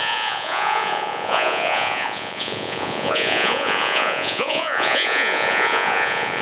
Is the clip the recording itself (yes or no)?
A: no